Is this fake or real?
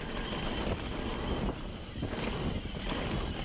real